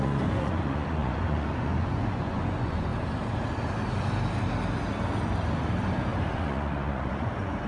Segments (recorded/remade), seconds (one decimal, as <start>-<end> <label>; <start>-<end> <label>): 0.0-2.9 remade; 2.9-6.3 recorded; 6.3-7.7 remade